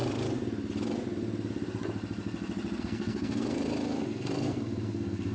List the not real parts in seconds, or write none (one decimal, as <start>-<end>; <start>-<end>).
2.8-5.3